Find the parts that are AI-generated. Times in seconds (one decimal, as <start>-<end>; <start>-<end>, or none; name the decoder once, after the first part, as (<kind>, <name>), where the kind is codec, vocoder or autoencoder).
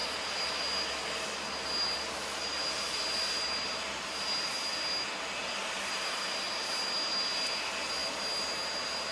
none